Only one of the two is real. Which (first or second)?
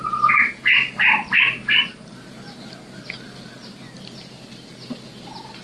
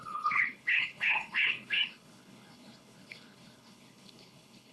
first